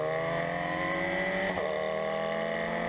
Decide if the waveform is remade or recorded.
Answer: recorded